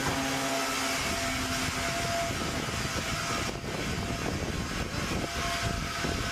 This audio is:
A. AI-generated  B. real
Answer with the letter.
B